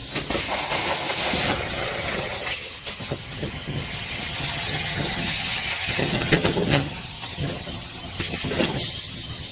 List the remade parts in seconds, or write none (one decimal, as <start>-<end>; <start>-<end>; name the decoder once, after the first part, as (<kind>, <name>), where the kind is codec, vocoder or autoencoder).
1.5-9.5 (vocoder, HiFi-GAN)